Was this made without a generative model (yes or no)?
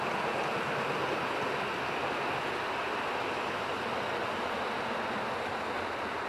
yes